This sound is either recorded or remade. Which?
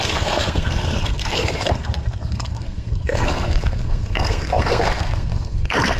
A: remade